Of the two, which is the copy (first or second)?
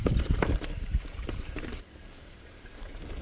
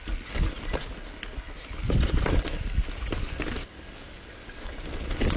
first